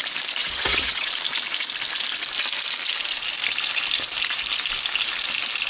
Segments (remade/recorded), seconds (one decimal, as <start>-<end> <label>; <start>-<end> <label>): 0.0-0.4 recorded; 0.4-1.1 remade; 1.1-5.7 recorded